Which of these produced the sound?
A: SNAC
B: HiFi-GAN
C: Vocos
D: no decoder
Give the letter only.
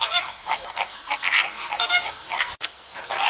A